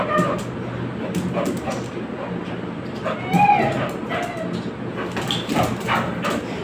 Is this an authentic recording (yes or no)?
yes